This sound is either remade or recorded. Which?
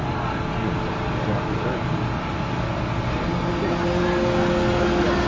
recorded